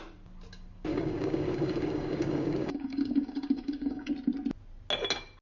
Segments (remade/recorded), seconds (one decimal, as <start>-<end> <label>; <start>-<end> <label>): 0.0-0.9 recorded; 0.9-4.1 remade; 4.1-5.4 recorded